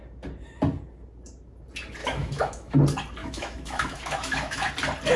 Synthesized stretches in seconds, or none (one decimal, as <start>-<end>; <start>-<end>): 2.0-2.8; 3.2-4.7